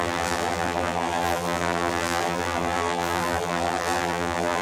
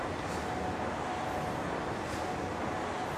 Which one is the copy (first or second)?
first